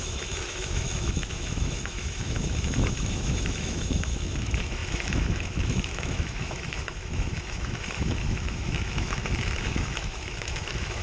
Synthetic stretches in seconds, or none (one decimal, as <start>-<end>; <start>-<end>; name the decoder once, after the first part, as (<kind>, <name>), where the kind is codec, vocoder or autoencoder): 0.0-11.0 (autoencoder, DAC-VAE)